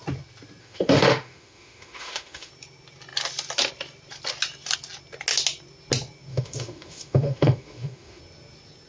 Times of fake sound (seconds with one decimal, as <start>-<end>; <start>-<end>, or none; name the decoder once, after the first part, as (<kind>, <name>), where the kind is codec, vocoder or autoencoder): 0.6-2.5 (autoencoder, DAC-VAE); 6.3-8.2